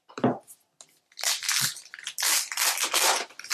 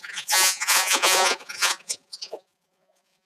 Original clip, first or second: first